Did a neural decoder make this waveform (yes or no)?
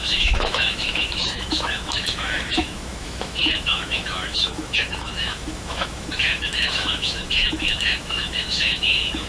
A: yes